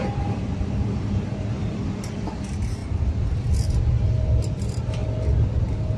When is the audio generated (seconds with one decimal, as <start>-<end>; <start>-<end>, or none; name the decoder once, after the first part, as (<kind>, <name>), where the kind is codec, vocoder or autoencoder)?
0.0-5.0 (vocoder, BigVGAN v2)